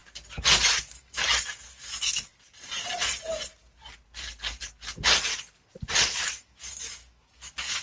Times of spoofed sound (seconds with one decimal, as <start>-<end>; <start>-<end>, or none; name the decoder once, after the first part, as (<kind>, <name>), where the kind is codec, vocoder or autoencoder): 0.7-2.3 (autoencoder, DAC-VAE); 6.3-7.8